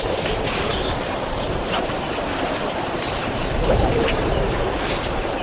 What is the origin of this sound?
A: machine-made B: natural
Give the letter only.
A